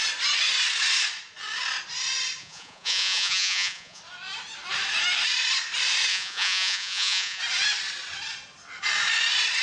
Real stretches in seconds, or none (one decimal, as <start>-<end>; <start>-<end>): 0.0-2.4; 4.0-6.1; 7.4-9.6